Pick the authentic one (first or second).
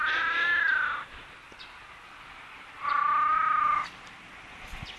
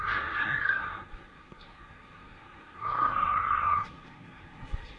first